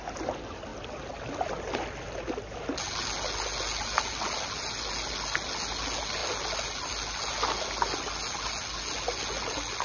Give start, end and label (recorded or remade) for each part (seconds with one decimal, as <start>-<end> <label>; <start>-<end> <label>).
0.0-9.8 recorded